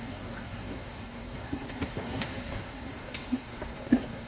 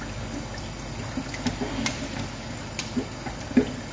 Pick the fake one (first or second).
first